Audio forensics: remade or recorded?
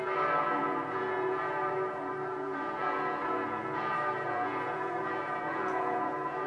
remade